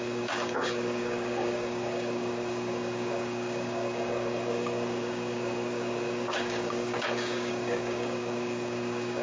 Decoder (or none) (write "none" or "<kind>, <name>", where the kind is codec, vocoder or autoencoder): codec, DAC